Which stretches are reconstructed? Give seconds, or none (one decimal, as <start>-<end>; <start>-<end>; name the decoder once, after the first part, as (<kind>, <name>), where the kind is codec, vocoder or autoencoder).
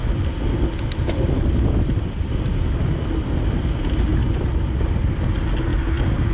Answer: none